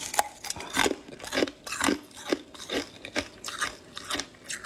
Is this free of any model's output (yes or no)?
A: yes